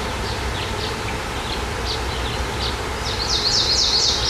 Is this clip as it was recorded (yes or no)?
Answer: yes